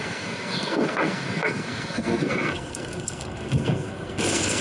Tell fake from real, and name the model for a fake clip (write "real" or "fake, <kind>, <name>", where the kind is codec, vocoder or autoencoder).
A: fake, codec, SNAC